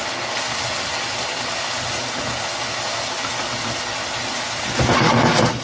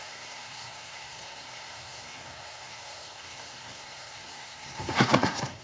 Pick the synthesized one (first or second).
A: second